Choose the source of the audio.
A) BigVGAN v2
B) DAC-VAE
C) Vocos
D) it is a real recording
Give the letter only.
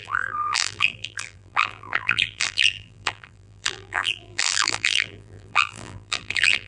A